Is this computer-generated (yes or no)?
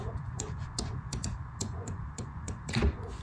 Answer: yes